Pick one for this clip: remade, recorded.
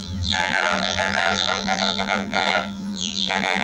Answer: remade